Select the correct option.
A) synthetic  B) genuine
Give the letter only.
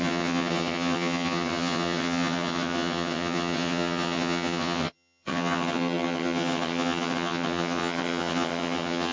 A